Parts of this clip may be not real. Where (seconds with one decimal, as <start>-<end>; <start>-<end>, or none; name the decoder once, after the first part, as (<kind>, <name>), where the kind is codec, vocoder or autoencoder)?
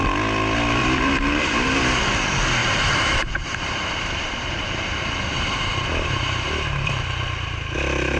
0.8-1.8 (vocoder, BigVGAN v2); 2.6-6.9